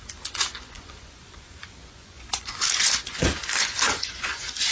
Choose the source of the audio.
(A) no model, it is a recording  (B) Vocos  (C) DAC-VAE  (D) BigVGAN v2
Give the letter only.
B